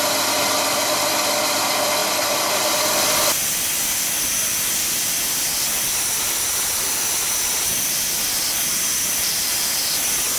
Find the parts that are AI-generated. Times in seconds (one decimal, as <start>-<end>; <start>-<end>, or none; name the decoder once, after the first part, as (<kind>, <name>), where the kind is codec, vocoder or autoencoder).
none

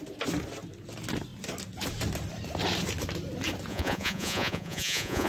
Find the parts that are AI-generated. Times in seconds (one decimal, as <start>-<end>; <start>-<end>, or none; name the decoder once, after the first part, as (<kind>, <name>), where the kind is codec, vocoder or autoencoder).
3.7-5.3 (vocoder, Vocos)

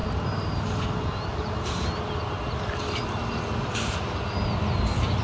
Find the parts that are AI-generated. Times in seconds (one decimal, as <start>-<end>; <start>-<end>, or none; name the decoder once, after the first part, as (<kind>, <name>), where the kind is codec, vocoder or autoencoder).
none

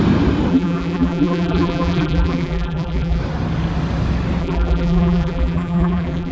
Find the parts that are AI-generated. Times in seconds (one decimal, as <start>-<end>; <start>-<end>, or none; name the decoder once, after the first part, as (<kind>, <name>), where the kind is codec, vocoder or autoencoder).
0.5-3.2 (vocoder, BigVGAN v2); 4.4-6.3

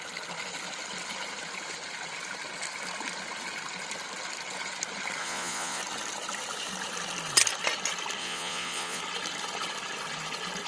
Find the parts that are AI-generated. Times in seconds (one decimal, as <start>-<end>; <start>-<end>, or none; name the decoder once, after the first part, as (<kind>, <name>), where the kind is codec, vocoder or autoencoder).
5.2-5.8 (vocoder, Vocos); 8.2-9.0